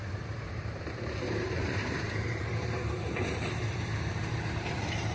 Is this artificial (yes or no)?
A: yes